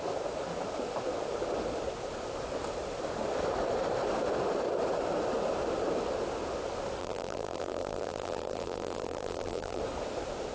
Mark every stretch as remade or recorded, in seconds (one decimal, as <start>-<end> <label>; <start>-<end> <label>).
0.0-7.0 recorded; 7.0-9.8 remade; 9.8-10.5 recorded